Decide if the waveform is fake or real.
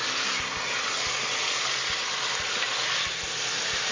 real